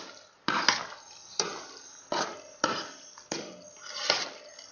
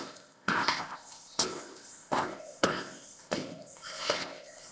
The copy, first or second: second